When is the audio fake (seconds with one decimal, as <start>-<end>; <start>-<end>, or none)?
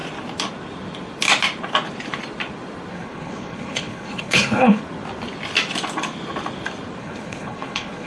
2.9-4.8; 7.0-8.1